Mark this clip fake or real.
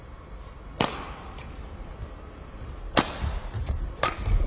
real